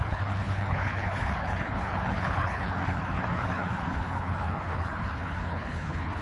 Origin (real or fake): fake